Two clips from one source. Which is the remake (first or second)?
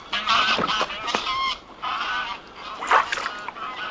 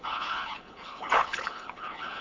second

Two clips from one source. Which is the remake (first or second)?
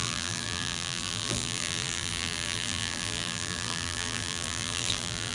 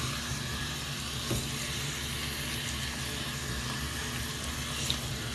first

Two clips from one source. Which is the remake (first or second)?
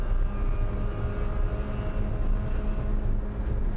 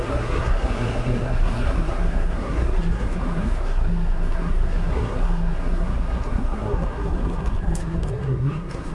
second